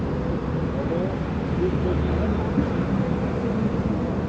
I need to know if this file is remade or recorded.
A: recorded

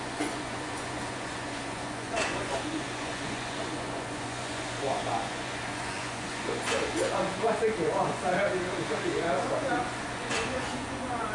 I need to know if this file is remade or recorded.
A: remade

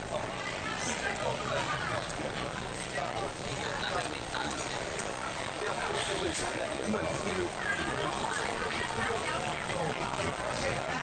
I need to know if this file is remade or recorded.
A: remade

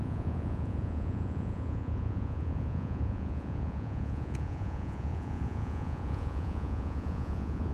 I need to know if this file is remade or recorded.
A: remade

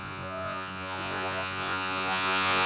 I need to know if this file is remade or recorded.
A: remade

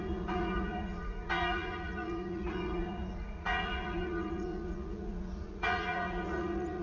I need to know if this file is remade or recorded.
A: remade